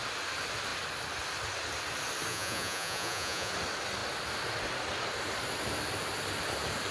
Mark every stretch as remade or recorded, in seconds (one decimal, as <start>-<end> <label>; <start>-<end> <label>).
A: 0.0-2.3 recorded; 2.3-3.5 remade; 3.5-6.9 recorded